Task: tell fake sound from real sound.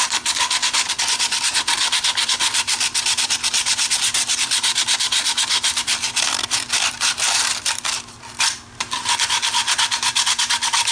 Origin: fake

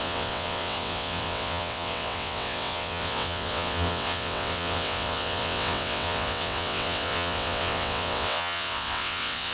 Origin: fake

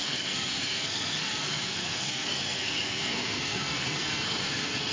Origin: fake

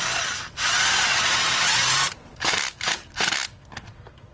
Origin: real